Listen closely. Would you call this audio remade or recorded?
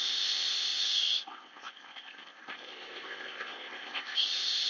remade